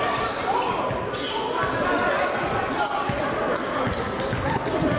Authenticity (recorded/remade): remade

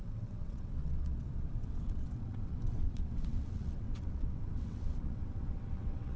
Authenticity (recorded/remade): remade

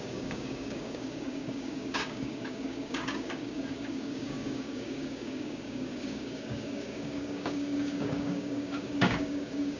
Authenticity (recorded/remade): remade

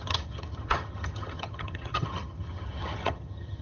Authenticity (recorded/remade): remade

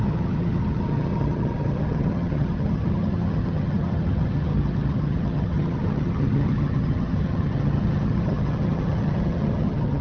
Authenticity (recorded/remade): remade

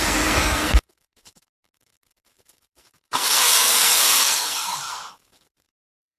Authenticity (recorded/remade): remade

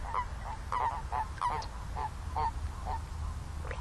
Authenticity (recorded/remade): recorded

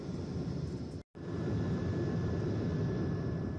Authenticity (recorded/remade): recorded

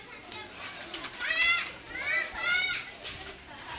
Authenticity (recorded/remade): recorded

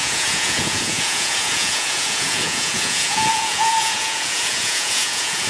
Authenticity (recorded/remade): remade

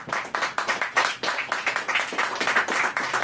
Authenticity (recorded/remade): recorded